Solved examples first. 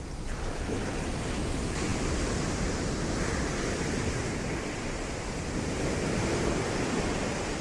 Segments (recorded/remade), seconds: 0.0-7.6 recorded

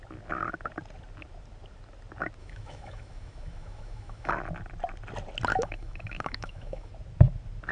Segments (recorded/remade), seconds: 0.0-2.4 recorded; 2.4-4.3 remade; 4.3-5.5 recorded; 5.5-6.9 remade; 6.9-7.7 recorded

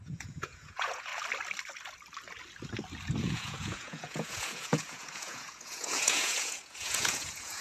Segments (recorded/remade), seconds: 0.0-1.1 remade; 1.1-3.2 recorded; 3.2-7.6 remade